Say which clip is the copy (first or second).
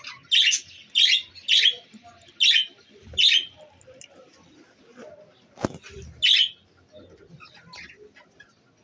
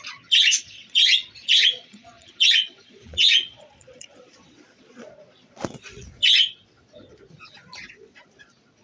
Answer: second